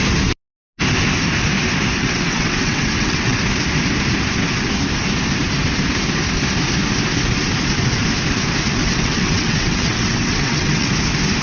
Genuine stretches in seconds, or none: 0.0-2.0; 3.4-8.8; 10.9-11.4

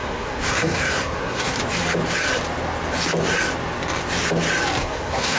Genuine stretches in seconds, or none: 1.6-4.8

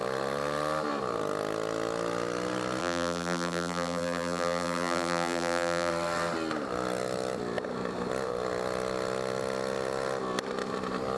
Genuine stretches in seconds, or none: 0.0-2.8; 5.9-11.2

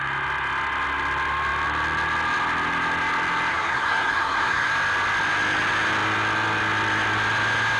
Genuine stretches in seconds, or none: 0.0-3.5; 4.7-7.8

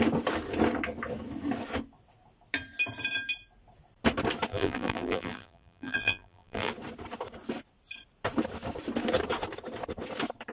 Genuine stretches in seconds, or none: 0.0-4.5; 6.7-10.5

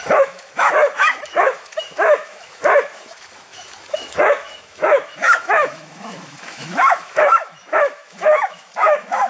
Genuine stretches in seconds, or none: none

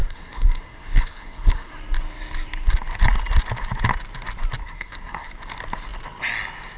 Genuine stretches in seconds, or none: 1.7-4.6; 5.3-6.8

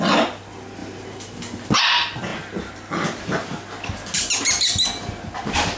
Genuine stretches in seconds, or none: 0.0-5.8